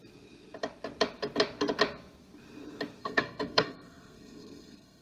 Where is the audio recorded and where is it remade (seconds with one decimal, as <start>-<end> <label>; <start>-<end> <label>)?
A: 0.0-3.0 recorded; 3.0-5.0 remade